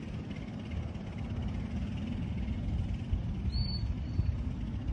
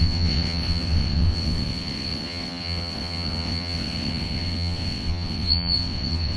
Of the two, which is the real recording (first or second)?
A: first